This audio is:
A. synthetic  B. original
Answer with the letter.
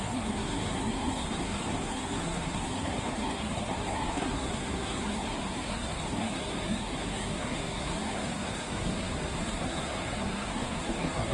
A